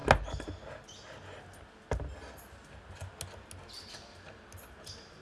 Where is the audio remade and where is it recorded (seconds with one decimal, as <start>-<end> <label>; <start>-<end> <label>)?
0.0-5.2 recorded